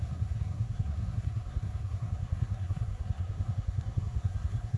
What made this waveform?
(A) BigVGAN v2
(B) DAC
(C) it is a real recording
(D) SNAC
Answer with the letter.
D